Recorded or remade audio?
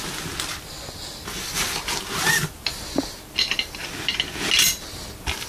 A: recorded